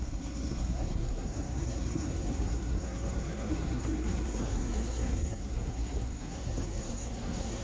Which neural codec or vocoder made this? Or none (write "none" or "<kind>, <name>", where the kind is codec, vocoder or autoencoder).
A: codec, SNAC